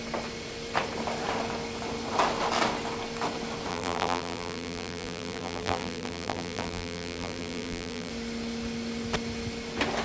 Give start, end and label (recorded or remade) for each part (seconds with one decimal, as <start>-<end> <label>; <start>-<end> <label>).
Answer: 0.0-3.7 recorded; 3.7-8.1 remade; 8.1-10.0 recorded